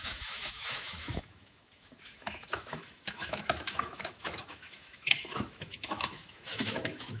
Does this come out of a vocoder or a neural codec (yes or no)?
yes